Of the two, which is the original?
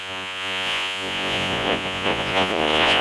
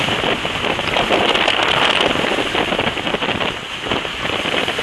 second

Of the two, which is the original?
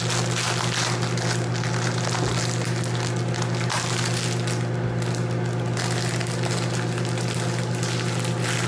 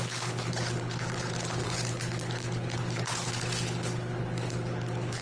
first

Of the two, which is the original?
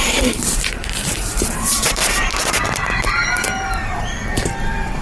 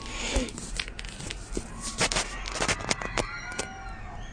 second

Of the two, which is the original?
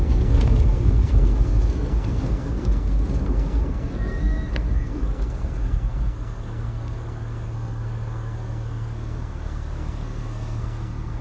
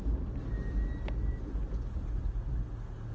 second